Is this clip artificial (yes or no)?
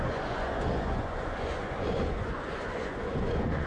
yes